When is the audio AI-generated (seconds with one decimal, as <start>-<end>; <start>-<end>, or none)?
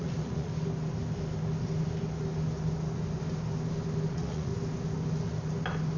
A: 0.0-0.5; 4.1-4.5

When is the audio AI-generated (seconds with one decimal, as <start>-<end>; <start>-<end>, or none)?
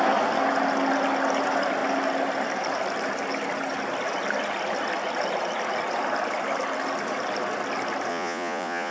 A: 8.1-8.9